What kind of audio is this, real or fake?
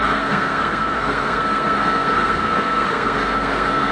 fake